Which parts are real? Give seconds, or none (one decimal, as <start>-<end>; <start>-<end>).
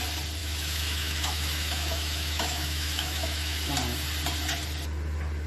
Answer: 0.0-0.4; 3.7-5.5